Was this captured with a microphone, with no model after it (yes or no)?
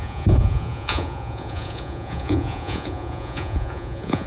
no